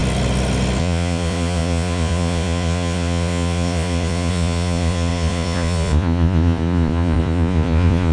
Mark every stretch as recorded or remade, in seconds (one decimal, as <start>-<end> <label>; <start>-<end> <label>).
0.0-0.8 recorded; 0.8-8.1 remade